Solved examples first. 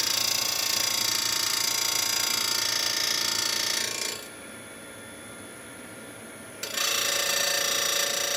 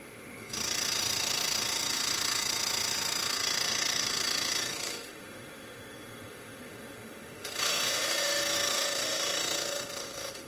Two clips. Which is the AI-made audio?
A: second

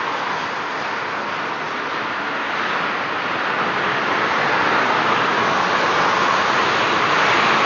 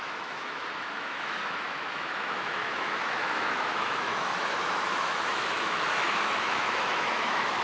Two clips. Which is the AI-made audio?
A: second